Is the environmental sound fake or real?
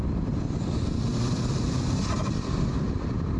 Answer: fake